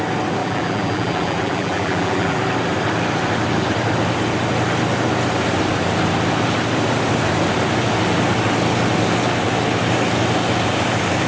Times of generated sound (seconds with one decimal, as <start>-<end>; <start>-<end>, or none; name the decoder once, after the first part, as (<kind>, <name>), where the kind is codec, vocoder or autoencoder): 0.4-2.4 (vocoder, BigVGAN v2)